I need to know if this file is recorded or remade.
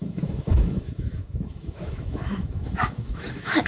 remade